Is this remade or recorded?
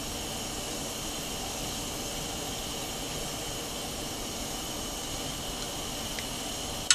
recorded